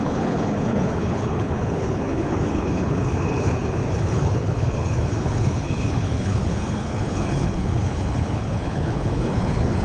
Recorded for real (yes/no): no